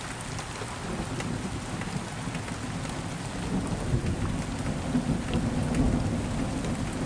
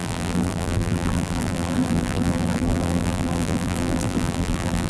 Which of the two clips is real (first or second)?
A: first